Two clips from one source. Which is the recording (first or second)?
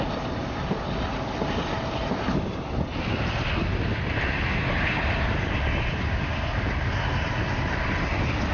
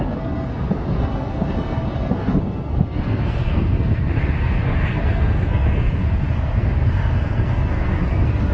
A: first